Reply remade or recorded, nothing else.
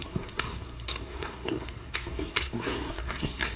remade